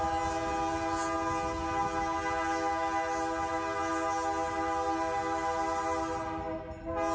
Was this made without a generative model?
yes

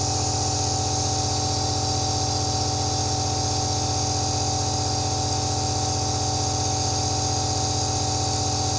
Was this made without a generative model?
yes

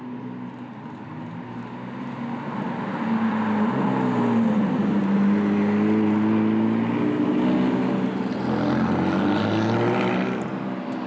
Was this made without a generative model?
yes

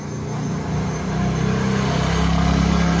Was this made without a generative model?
yes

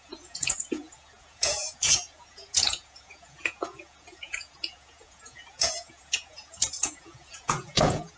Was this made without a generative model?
no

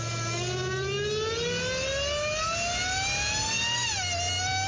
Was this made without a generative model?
yes